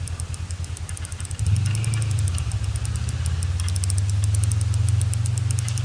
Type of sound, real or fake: real